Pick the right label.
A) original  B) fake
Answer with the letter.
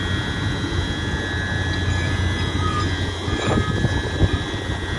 A